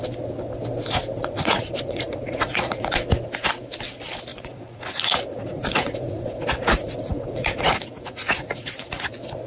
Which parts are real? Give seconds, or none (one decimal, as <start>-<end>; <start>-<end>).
0.0-1.2; 2.9-4.3; 9.1-9.5